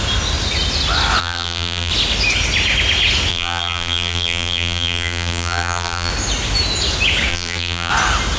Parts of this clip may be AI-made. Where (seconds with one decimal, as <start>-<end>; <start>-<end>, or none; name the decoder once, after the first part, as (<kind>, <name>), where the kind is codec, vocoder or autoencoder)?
1.2-1.9 (vocoder, BigVGAN v2); 3.3-6.1; 7.3-7.9